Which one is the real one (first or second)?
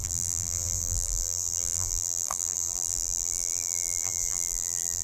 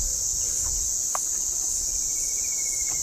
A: second